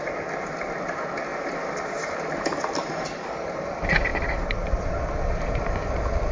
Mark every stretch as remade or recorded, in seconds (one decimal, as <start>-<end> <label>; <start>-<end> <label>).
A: 0.0-6.3 recorded